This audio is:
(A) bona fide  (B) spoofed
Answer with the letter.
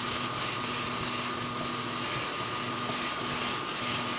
A